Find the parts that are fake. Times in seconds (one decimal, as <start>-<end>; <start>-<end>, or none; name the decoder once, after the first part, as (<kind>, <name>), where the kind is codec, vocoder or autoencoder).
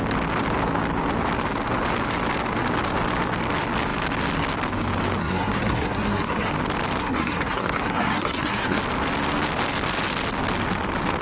5.2-6.5 (codec, SNAC); 7.0-8.8